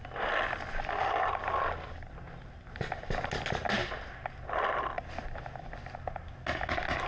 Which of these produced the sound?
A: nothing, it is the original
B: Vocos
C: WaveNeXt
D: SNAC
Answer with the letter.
A